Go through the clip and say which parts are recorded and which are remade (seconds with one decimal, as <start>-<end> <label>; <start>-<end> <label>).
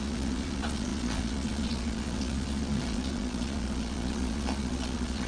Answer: 0.0-5.3 remade